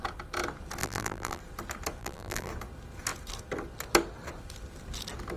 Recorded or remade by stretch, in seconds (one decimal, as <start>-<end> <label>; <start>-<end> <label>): 0.0-0.8 recorded; 0.8-1.4 remade; 1.4-2.0 recorded; 2.0-2.5 remade; 2.5-5.4 recorded

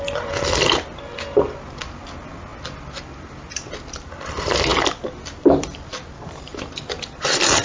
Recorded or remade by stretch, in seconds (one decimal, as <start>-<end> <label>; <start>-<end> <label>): 0.0-4.7 recorded; 4.7-6.0 remade; 6.0-7.6 recorded